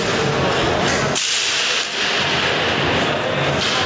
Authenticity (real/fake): real